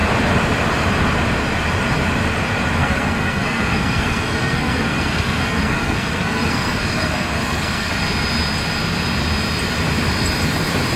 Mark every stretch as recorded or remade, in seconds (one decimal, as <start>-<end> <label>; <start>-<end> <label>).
0.0-2.8 recorded; 2.8-7.9 remade; 7.9-11.0 recorded